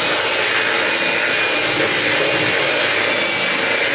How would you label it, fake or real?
real